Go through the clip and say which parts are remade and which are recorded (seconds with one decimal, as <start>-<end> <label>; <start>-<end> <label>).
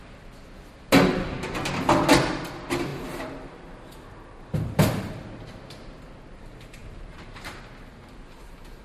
0.0-2.9 recorded; 2.9-3.6 remade; 3.6-6.8 recorded; 6.8-7.6 remade; 7.6-8.8 recorded